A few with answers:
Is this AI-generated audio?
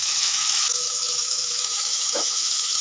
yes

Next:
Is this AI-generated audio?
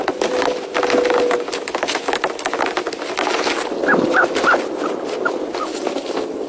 no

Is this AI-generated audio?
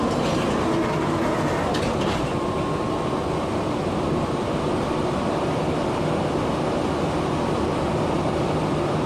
no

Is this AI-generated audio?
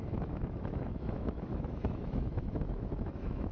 yes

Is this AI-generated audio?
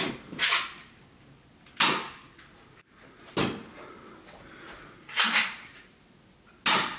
no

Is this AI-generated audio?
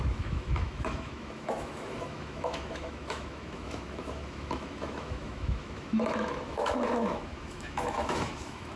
yes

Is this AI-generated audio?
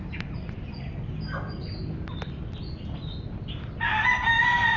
no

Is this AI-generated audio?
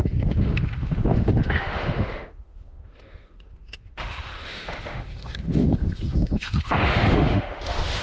yes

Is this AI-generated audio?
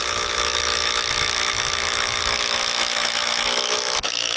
yes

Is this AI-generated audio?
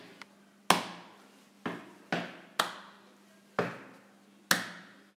no